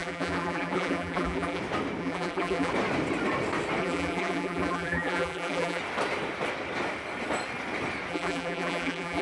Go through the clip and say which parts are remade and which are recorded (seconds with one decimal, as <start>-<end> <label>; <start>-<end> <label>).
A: 0.0-1.6 remade; 1.6-2.0 recorded; 2.0-2.7 remade; 2.7-3.8 recorded; 3.8-5.8 remade; 5.8-8.1 recorded; 8.1-9.2 remade